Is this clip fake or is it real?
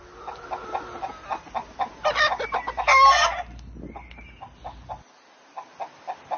real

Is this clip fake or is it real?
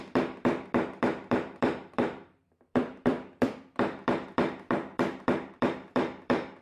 fake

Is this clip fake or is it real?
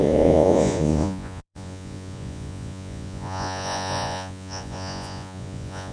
fake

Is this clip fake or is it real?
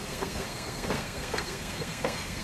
fake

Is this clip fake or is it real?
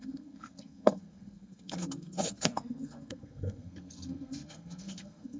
fake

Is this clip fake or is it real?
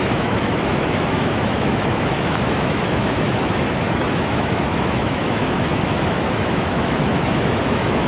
fake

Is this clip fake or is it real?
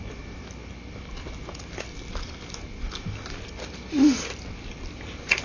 real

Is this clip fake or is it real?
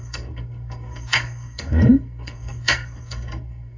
fake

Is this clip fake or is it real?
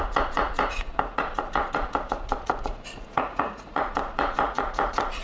fake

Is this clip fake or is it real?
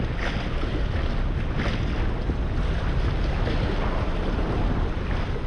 real